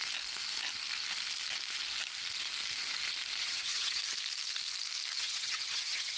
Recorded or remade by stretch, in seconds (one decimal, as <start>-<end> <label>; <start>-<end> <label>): 0.0-3.4 recorded; 3.4-4.0 remade; 4.0-5.2 recorded; 5.2-6.2 remade